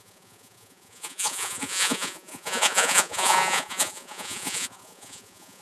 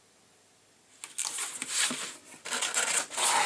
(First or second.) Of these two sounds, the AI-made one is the first